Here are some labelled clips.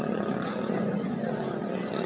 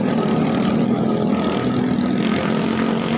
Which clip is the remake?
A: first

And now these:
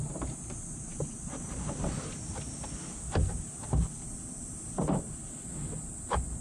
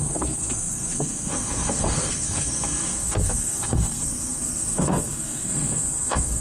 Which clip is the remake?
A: second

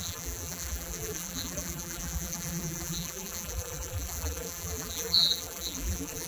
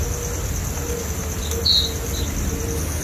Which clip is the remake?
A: first